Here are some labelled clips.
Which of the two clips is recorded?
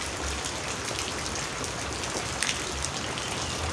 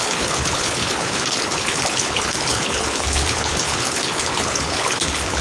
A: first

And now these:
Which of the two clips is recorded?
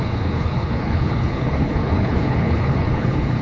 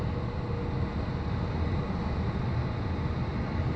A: second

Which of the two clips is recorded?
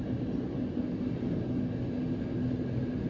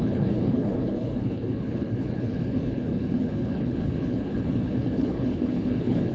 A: first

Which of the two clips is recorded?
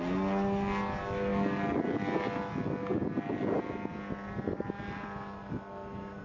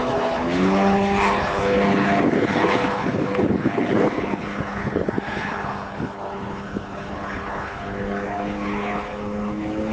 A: first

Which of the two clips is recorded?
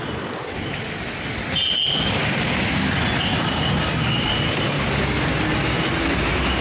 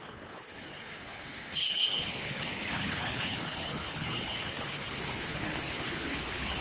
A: first